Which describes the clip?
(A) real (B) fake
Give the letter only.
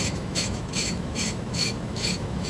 B